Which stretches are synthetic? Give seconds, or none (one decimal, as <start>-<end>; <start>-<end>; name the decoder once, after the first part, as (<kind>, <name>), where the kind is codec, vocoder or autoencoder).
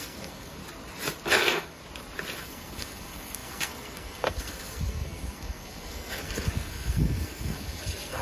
0.0-0.6 (codec, SNAC); 1.3-1.8; 2.4-8.2